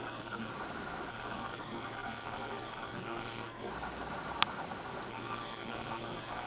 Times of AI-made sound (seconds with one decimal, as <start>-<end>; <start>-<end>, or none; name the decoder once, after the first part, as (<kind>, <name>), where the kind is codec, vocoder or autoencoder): 0.0-0.5 (codec, SNAC); 1.1-3.7; 5.1-6.5